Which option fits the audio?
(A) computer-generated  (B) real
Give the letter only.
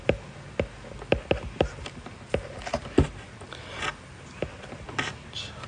B